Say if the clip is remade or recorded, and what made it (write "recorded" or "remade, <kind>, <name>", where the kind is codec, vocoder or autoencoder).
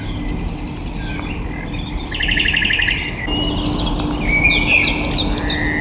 recorded